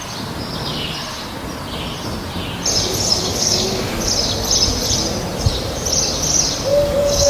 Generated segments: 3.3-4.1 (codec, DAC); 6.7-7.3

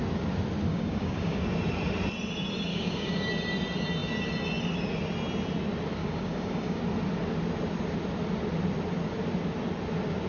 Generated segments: 0.7-1.4 (codec, DAC); 2.7-3.3; 6.0-6.8

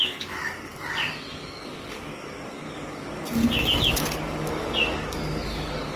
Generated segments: 0.0-3.4 (codec, DAC); 3.9-6.0

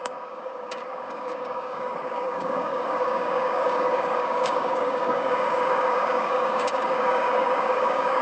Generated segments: 0.0-8.2 (codec, DAC)